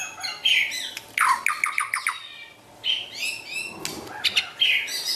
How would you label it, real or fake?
real